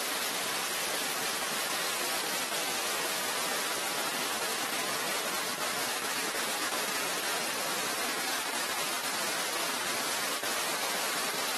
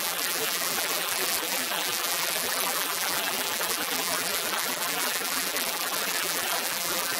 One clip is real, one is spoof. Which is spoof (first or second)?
second